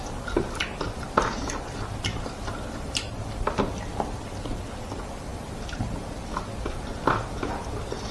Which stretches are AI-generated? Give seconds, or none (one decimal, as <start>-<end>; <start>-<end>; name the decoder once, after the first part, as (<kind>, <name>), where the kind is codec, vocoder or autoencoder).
0.0-8.1 (vocoder, BigVGAN v2)